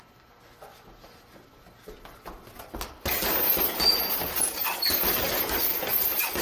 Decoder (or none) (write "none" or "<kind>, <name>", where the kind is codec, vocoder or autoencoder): none